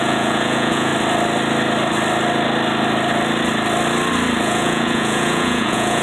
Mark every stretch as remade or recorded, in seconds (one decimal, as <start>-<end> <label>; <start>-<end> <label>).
0.0-0.9 remade; 0.9-4.4 recorded; 4.4-6.0 remade